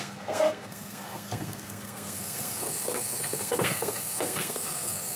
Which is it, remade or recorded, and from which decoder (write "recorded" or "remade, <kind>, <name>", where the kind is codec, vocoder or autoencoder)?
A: remade, codec, SNAC